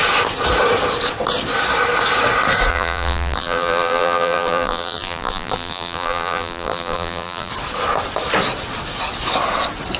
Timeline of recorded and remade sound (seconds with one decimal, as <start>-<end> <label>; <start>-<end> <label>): 0.0-2.7 recorded; 2.7-7.5 remade; 7.5-10.0 recorded